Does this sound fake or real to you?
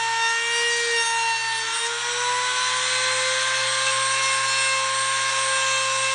real